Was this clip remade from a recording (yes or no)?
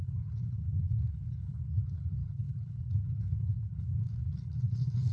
yes